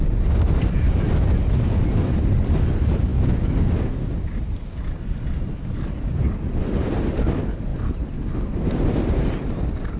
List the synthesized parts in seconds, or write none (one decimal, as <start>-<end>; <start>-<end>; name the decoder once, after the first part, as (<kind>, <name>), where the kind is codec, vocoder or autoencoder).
none